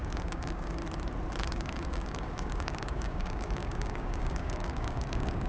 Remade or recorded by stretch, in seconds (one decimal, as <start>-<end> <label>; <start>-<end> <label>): 0.0-0.8 remade; 0.8-1.4 recorded; 1.4-5.5 remade